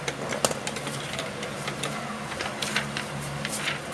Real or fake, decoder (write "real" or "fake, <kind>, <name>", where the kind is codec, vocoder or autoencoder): real